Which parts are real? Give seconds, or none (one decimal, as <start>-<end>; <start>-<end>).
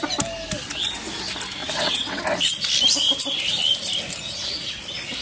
0.0-1.6; 2.2-5.2